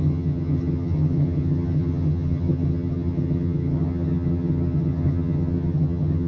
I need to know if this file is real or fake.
fake